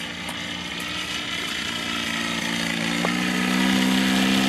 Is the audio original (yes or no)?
yes